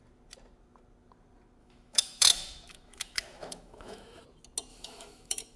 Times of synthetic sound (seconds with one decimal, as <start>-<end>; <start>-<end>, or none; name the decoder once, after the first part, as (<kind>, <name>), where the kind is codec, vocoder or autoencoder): 1.6-4.2 (autoencoder, DAC-VAE); 4.7-5.6